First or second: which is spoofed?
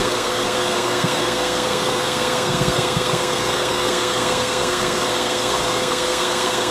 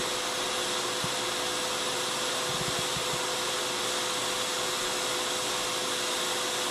first